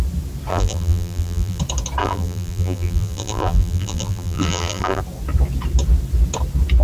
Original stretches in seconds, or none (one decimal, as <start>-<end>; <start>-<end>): 0.0-0.5; 1.6-2.0; 5.0-6.8